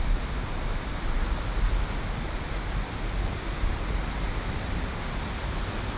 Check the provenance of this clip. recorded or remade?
recorded